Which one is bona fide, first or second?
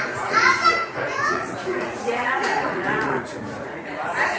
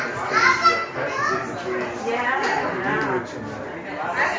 second